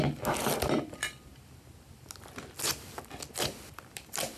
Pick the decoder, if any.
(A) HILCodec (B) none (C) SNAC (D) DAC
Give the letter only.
B